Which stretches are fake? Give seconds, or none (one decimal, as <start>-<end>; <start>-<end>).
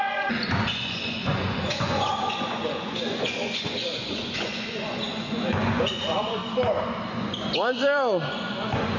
0.0-6.4; 7.1-9.0